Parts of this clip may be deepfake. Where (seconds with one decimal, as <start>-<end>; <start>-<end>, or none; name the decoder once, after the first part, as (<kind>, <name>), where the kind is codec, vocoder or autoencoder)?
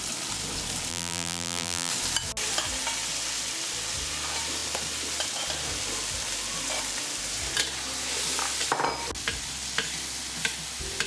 0.9-1.9 (vocoder, BigVGAN v2)